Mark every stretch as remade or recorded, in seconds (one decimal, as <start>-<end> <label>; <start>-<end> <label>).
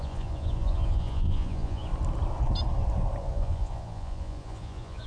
0.0-1.9 remade; 1.9-3.2 recorded; 3.2-5.1 remade